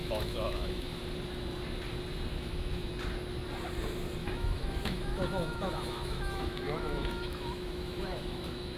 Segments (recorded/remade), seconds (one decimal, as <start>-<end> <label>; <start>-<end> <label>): 0.0-1.0 remade; 1.0-2.3 recorded; 2.3-2.9 remade; 2.9-4.2 recorded; 4.2-8.8 remade